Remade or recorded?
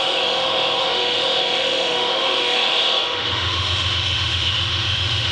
remade